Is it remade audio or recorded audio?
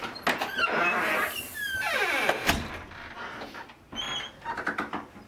recorded